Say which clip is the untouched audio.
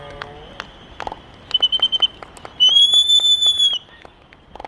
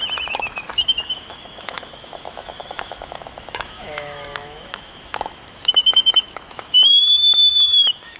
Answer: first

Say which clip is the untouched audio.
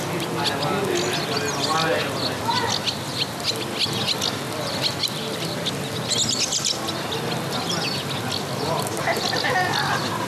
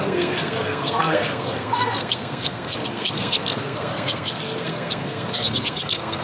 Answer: first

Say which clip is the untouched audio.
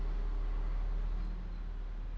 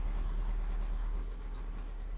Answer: first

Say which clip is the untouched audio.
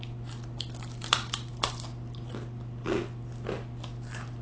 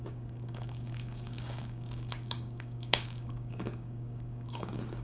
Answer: first